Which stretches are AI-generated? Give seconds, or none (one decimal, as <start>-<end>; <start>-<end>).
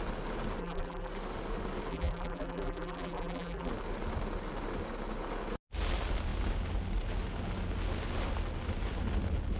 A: 0.6-1.1; 1.9-3.7